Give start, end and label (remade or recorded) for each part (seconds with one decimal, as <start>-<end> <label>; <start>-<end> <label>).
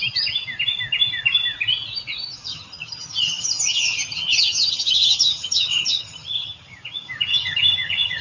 0.0-2.5 recorded; 2.5-6.7 remade; 6.7-7.3 recorded; 7.3-8.2 remade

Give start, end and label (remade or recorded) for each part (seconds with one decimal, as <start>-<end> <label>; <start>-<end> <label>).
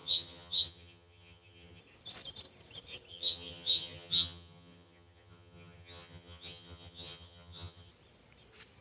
0.0-1.8 remade; 1.8-3.1 recorded; 3.1-7.9 remade; 7.9-8.8 recorded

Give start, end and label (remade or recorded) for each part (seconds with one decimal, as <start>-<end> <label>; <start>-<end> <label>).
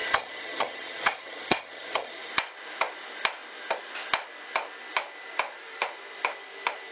0.0-2.3 remade; 2.3-6.9 recorded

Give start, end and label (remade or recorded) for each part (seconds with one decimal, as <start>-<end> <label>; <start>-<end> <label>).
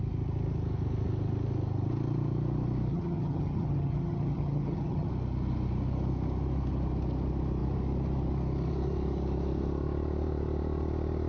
0.0-2.9 recorded; 2.9-5.1 remade; 5.1-11.3 recorded